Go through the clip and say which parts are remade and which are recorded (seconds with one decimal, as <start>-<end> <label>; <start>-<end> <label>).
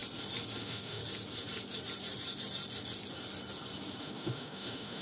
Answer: 0.0-0.6 recorded; 0.6-1.0 remade; 1.0-4.0 recorded; 4.0-5.0 remade